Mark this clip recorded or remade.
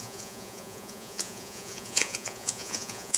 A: remade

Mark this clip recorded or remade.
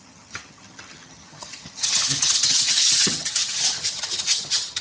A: remade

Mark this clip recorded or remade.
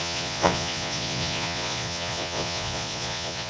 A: remade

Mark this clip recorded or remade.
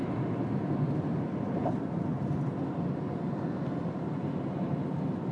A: recorded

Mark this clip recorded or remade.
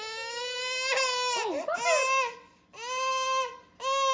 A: recorded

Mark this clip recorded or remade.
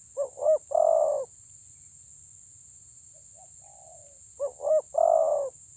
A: recorded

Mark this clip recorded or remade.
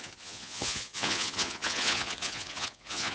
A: remade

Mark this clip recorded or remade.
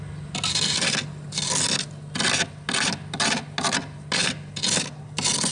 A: recorded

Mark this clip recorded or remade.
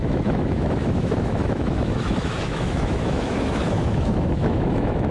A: remade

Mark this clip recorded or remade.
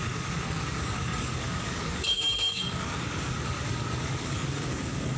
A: remade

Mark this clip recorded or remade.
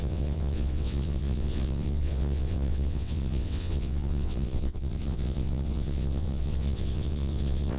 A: remade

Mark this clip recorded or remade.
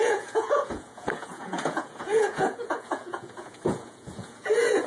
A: remade